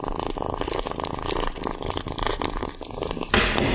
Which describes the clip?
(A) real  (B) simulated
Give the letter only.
A